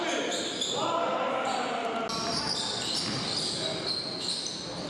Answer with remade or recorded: recorded